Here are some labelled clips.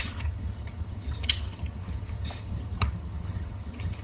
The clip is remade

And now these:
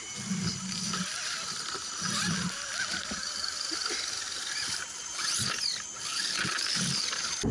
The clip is recorded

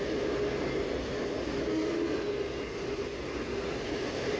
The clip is recorded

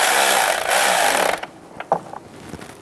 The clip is recorded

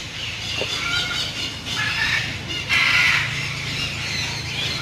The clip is recorded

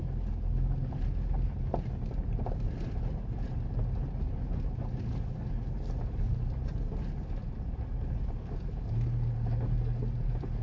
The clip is recorded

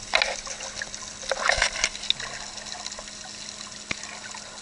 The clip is recorded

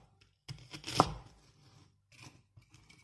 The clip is recorded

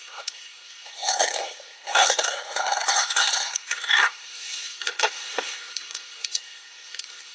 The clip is remade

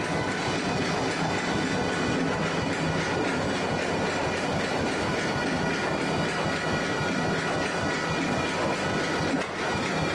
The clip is recorded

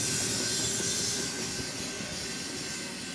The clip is recorded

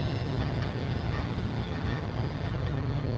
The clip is remade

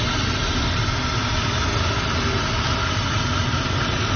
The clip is recorded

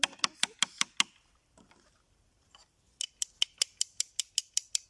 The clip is recorded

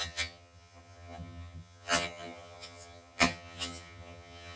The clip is remade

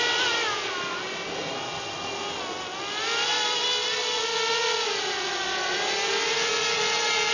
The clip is recorded